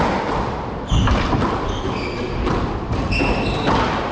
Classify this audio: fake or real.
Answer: real